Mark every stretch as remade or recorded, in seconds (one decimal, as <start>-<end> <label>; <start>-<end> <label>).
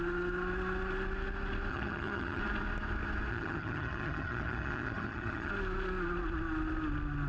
0.0-1.7 recorded; 1.7-2.4 remade; 2.4-3.3 recorded; 3.3-5.5 remade; 5.5-7.3 recorded